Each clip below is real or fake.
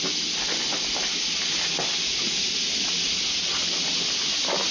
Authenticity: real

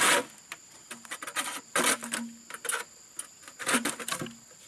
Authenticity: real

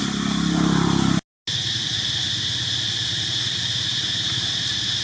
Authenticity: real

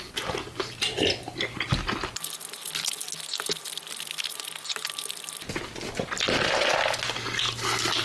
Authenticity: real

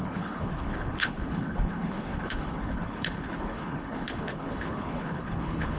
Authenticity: fake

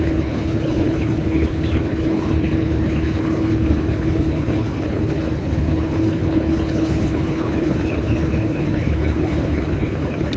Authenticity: fake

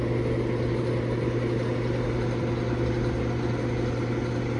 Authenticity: real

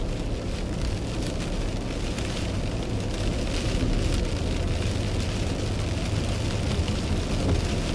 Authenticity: real